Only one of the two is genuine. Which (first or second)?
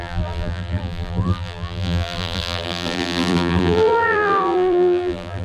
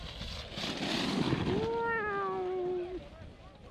second